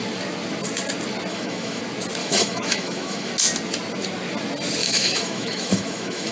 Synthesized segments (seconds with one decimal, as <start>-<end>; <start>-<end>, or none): 1.3-1.8; 2.2-3.3; 4.8-6.3